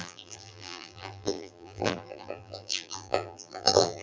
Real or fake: fake